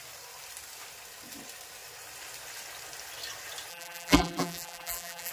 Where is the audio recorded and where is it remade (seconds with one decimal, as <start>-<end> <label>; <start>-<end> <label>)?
0.0-3.7 recorded; 3.7-5.3 remade

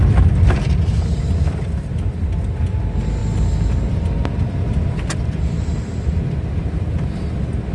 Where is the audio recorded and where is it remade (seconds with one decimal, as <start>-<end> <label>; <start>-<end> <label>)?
0.0-7.7 recorded